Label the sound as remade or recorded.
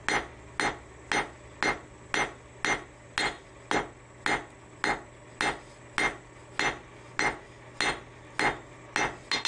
recorded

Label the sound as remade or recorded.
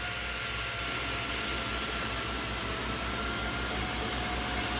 recorded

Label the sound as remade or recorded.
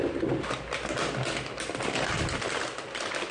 recorded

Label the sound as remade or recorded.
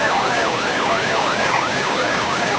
remade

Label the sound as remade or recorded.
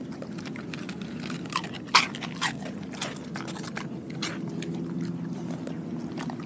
recorded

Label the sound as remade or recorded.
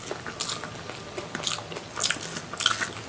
recorded